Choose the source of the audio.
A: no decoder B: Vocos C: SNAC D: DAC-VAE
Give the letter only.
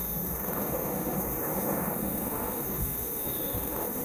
D